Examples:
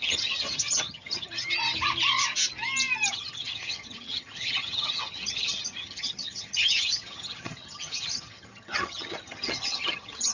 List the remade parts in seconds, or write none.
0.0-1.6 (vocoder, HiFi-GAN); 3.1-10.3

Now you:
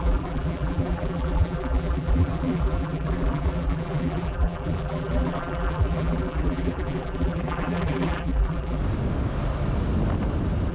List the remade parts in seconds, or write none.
0.0-8.8 (vocoder, BigVGAN v2)

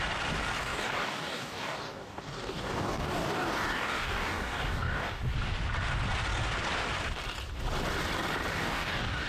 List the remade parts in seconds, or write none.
0.6-5.2 (codec, DAC); 8.5-9.3